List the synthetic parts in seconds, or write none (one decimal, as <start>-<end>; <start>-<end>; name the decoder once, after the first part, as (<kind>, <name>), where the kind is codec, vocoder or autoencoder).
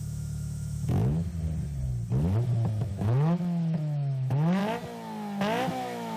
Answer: 0.0-1.3 (autoencoder, DAC-VAE); 2.9-4.6; 5.7-6.2